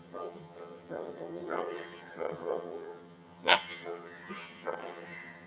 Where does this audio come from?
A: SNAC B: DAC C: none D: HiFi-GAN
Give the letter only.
D